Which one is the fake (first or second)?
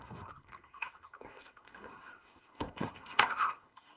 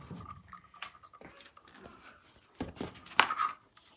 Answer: first